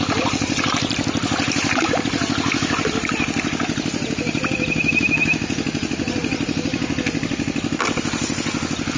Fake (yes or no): no